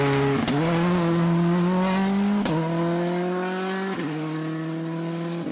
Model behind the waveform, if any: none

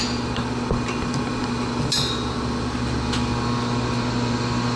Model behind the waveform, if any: none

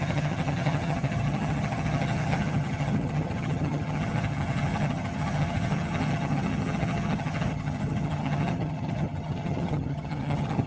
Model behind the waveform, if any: vocoder, HiFi-GAN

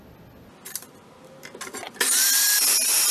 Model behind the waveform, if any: none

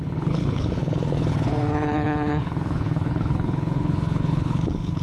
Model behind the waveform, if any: codec, HILCodec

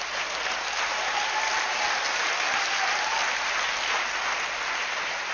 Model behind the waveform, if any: none